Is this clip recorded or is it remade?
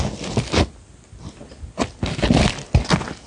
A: recorded